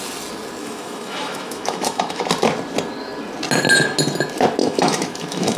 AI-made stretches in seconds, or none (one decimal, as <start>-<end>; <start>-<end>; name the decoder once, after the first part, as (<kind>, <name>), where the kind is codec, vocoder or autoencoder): 0.6-2.2 (autoencoder, DAC-VAE); 4.6-5.6